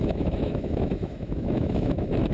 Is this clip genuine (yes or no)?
no